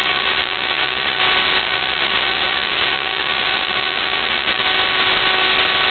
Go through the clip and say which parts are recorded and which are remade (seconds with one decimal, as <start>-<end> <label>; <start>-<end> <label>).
0.0-1.2 remade; 1.2-1.6 recorded; 1.6-4.6 remade; 4.6-5.9 recorded